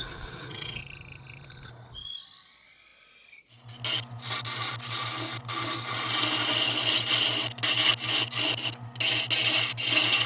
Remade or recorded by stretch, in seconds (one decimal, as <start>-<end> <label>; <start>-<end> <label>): 0.0-0.8 remade; 0.8-10.3 recorded